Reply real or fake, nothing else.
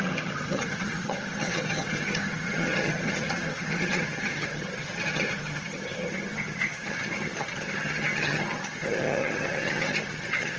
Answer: fake